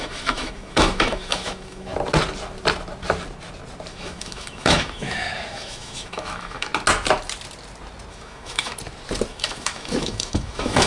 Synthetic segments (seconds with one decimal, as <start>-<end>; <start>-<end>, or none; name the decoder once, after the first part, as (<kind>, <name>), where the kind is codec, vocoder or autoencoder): 0.0-1.9 (autoencoder, DAC-VAE); 3.9-6.7; 8.1-8.7; 9.3-10.9